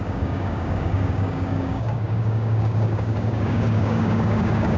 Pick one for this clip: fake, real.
fake